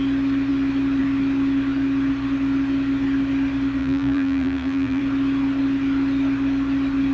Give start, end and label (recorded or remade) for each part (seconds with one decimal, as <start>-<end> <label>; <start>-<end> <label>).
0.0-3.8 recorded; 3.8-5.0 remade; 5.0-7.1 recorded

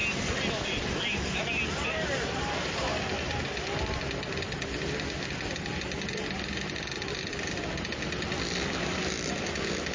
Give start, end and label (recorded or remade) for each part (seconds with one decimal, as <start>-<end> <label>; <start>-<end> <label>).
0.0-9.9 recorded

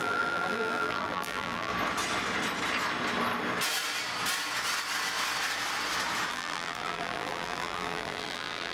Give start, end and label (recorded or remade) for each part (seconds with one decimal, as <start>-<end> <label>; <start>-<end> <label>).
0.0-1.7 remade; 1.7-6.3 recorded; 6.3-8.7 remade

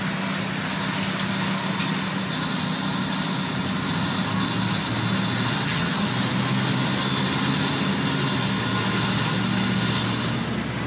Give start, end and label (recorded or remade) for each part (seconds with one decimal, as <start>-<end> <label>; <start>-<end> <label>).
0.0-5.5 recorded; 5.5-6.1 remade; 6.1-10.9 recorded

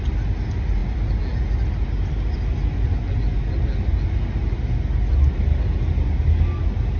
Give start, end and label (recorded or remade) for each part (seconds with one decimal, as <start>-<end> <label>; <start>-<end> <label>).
0.0-7.0 recorded

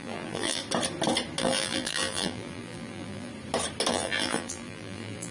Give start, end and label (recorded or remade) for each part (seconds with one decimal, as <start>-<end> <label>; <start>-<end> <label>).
0.0-0.6 remade; 0.6-1.4 recorded; 1.4-3.3 remade; 3.3-3.9 recorded; 3.9-5.3 remade

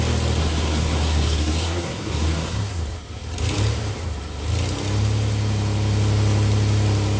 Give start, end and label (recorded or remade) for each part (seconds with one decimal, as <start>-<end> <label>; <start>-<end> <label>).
0.0-0.4 recorded; 0.4-2.8 remade; 2.8-7.2 recorded